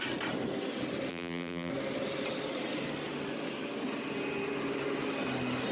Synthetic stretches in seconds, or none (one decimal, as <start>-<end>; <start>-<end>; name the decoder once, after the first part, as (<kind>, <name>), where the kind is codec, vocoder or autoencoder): 1.1-1.7 (vocoder, BigVGAN v2)